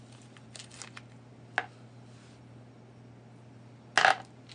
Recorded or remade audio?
recorded